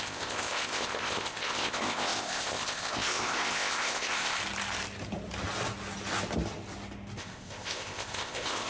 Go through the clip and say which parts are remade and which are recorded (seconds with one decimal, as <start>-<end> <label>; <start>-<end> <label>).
0.0-4.4 remade; 4.4-7.2 recorded; 7.2-8.7 remade